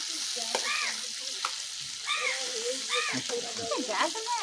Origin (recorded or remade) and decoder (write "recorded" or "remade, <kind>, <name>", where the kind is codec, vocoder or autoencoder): recorded